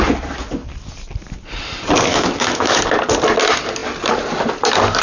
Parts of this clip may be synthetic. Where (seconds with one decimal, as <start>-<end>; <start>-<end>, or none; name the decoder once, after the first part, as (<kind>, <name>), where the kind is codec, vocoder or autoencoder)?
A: 2.1-2.8 (autoencoder, DAC-VAE)